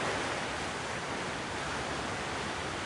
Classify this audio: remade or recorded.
recorded